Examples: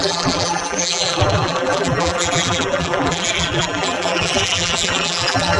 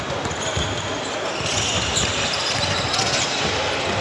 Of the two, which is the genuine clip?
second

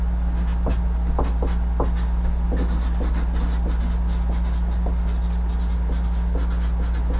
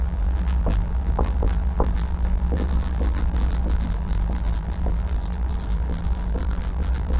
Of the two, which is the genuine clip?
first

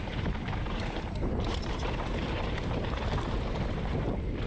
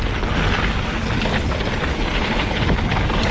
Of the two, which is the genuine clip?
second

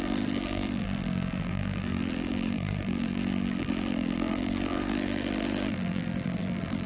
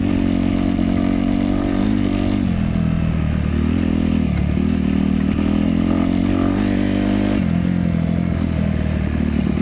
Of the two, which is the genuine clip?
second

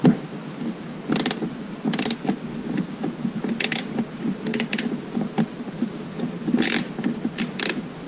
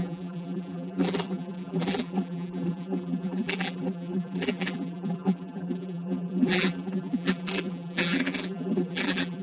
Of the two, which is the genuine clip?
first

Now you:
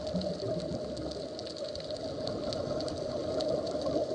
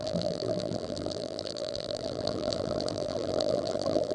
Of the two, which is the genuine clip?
first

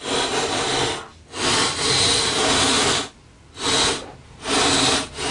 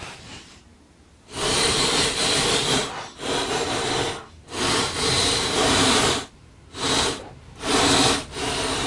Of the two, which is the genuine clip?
first